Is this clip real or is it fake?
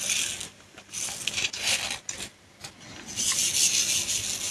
real